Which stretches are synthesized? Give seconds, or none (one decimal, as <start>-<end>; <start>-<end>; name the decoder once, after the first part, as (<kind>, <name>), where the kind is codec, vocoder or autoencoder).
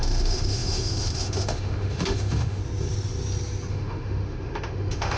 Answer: 0.0-2.6 (autoencoder, DAC-VAE); 3.7-5.2